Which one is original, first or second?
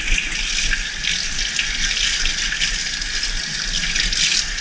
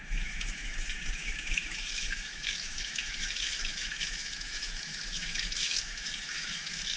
first